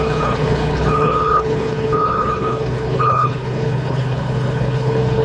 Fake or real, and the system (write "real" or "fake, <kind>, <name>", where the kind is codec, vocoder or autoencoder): fake, codec, HILCodec